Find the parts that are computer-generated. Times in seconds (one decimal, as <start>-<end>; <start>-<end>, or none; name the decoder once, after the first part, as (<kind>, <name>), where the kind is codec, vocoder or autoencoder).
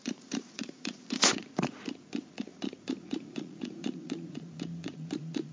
0.0-5.5 (vocoder, Vocos)